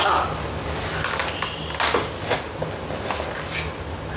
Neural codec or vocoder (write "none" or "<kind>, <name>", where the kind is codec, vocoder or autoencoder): none